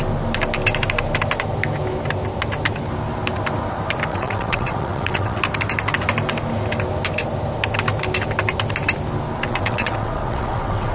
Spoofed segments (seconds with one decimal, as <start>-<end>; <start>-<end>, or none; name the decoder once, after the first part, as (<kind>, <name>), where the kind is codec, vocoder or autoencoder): 4.1-5.4 (vocoder, WaveNeXt); 9.5-10.9